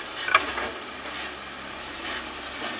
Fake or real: real